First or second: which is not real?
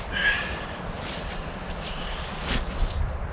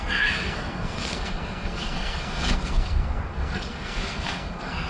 second